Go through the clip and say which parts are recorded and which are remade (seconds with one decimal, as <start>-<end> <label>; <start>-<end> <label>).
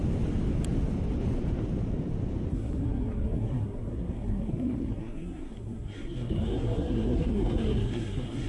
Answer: 0.0-2.5 recorded; 2.5-8.5 remade